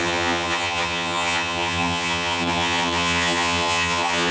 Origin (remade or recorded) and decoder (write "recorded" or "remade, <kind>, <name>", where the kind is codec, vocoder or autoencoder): remade, vocoder, HiFi-GAN